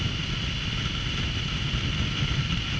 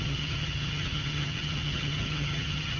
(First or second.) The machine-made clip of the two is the second